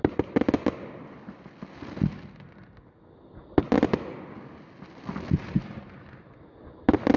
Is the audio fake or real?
real